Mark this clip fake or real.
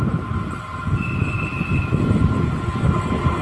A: real